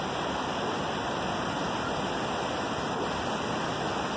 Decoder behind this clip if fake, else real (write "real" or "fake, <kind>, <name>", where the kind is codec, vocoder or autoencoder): real